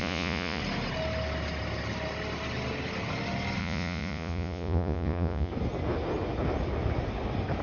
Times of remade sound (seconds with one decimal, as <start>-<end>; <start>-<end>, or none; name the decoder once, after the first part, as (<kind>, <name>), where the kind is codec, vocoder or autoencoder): 0.0-0.6 (vocoder, Vocos); 3.6-5.5

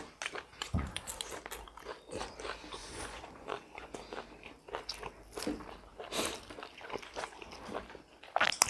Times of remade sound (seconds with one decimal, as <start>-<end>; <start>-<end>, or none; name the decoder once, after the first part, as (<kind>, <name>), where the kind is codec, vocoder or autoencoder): 0.5-1.1 (vocoder, Vocos); 2.8-3.9